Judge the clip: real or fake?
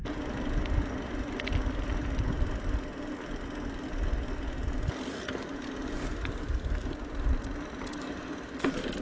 real